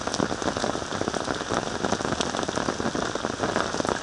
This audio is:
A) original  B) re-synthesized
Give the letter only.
A